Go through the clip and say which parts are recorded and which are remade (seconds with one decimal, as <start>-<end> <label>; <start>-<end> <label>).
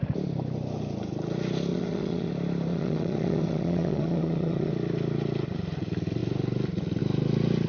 0.0-1.7 recorded; 1.7-2.3 remade; 2.3-2.7 recorded; 2.7-4.7 remade; 4.7-7.7 recorded